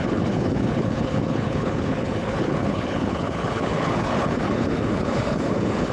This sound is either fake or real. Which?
fake